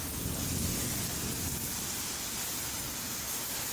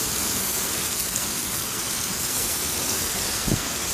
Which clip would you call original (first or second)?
first